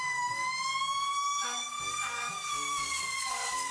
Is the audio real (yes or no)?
no